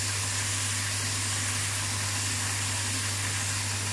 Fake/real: real